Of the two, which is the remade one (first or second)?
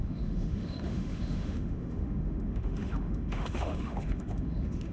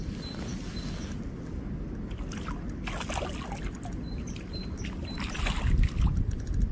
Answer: first